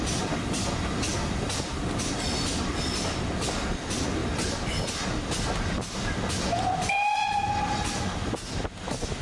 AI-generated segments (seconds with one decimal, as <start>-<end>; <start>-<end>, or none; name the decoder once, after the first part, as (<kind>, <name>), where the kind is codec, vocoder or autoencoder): none